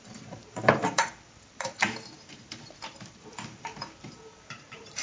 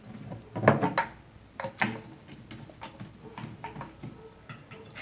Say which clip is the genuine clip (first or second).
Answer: second